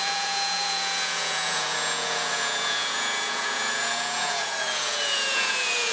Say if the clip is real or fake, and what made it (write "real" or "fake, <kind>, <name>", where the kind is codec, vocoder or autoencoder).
fake, vocoder, Vocos